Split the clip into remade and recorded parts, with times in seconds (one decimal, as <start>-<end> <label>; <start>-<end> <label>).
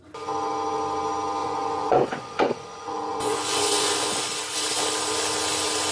0.0-1.4 recorded; 1.4-4.2 remade; 4.2-5.9 recorded